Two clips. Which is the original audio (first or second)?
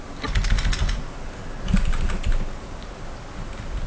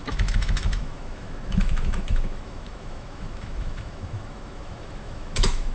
first